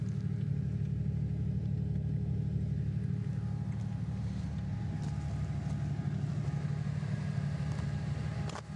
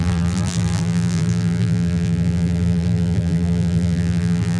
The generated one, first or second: second